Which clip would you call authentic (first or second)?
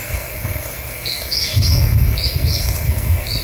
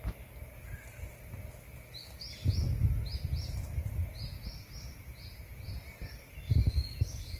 second